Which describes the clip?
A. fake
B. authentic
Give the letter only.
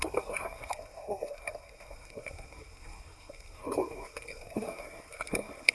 A